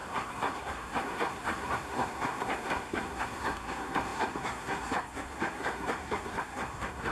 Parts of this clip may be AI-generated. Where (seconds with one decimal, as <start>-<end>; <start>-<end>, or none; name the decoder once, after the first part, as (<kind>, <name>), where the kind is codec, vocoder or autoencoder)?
0.0-7.1 (codec, SNAC)